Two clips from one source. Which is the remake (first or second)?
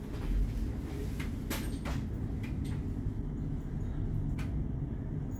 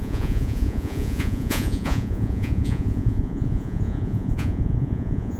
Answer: second